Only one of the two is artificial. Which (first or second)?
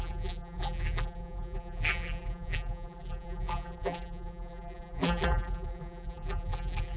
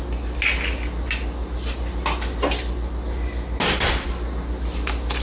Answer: first